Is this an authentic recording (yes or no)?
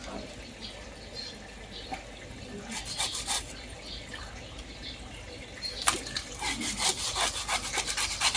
yes